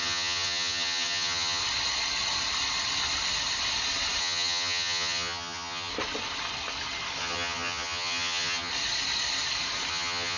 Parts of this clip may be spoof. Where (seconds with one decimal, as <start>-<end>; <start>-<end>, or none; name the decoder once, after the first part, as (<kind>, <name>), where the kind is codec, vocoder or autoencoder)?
0.0-1.6 (vocoder, HiFi-GAN); 4.2-5.9; 7.2-8.7; 9.9-10.4